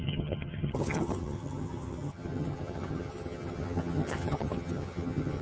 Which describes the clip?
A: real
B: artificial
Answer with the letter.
B